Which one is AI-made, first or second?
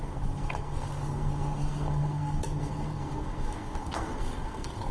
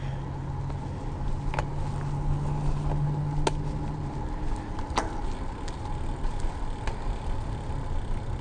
first